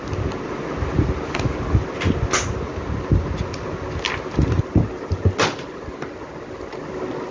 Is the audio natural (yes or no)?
yes